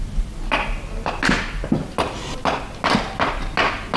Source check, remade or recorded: recorded